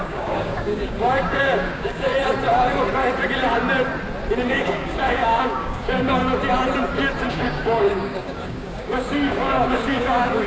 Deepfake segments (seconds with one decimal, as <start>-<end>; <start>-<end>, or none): 0.0-2.1; 4.5-6.2; 7.3-10.5